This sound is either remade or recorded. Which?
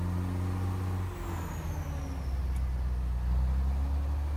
recorded